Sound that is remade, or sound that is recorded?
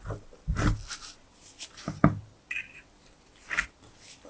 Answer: recorded